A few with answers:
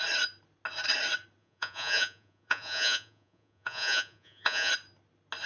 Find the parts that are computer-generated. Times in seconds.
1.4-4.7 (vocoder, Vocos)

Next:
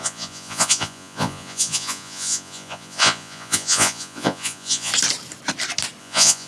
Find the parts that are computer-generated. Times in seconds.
0.0-4.9 (vocoder, Vocos); 6.0-6.5

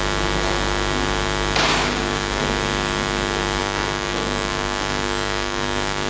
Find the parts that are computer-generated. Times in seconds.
1.7-2.4 (codec, DAC); 3.6-6.1

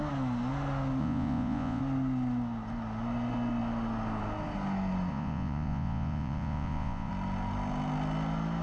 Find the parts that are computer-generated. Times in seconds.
1.0-1.8 (vocoder, Vocos); 5.1-7.1

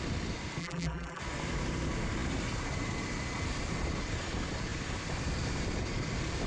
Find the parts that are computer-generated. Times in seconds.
0.6-1.2 (vocoder, BigVGAN v2)

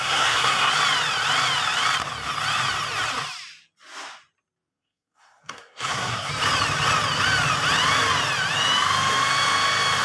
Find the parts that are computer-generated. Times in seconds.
0.0-0.7 (codec, SNAC); 4.7-6.3